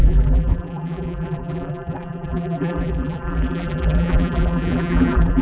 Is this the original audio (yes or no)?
no